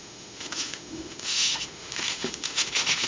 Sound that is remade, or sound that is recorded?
remade